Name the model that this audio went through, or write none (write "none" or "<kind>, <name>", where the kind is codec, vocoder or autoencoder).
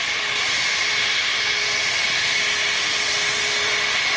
none